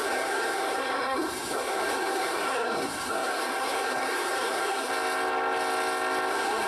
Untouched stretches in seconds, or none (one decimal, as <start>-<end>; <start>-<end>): 4.9-6.3